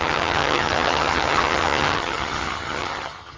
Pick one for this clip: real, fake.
fake